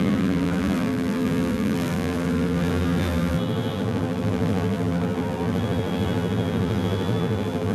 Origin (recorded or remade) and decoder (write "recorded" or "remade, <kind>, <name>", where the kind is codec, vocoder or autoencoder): remade, vocoder, BigVGAN v2